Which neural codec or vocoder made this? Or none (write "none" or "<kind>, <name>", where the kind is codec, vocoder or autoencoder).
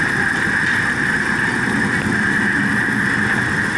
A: none